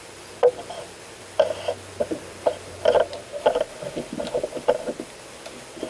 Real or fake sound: real